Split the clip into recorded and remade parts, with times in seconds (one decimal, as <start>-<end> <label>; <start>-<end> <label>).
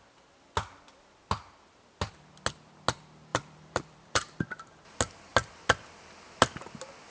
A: 0.0-3.3 recorded; 3.3-4.4 remade; 4.4-7.1 recorded